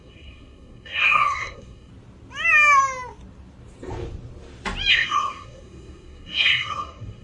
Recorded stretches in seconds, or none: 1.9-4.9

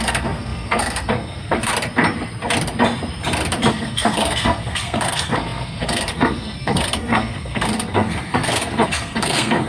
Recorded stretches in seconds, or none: 1.7-3.7

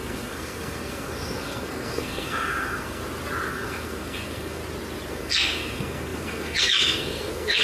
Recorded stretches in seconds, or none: 3.0-3.5; 4.6-5.1

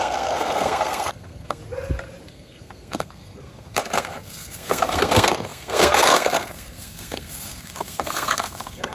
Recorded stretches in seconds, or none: 1.6-2.3